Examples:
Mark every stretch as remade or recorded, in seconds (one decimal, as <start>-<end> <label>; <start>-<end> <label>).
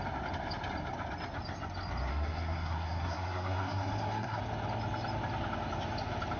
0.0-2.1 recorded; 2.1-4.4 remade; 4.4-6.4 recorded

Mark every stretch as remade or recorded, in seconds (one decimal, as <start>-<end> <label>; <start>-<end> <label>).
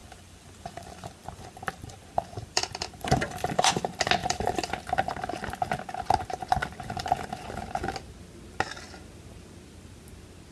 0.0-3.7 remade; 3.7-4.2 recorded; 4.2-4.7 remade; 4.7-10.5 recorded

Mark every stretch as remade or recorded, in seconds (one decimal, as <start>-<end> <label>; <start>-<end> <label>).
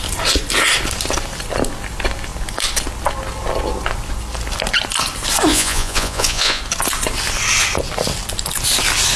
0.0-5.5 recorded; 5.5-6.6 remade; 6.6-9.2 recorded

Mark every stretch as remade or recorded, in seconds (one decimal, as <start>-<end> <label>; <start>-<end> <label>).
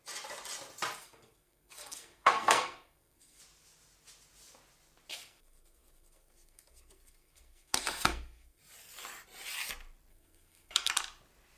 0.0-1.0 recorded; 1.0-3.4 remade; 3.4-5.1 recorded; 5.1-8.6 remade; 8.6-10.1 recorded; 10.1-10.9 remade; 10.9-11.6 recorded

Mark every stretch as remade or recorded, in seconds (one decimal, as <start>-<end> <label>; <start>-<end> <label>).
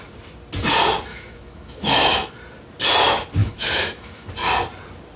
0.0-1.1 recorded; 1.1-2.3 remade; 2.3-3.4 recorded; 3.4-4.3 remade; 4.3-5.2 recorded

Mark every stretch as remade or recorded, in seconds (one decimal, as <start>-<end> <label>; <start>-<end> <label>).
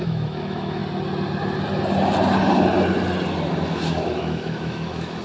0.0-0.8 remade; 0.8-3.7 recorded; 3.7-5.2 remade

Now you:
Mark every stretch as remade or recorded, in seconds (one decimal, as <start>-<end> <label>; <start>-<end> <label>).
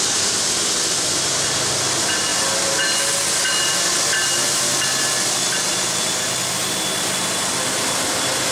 0.0-8.5 recorded